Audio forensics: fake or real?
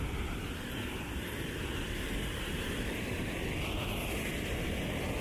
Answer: fake